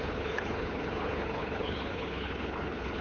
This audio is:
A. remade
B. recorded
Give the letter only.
A